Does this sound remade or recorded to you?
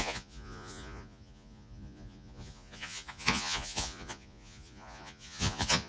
remade